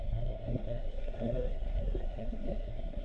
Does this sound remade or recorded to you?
remade